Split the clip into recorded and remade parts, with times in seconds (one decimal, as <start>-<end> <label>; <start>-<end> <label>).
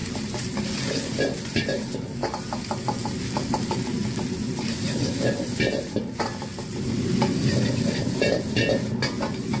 0.0-9.6 recorded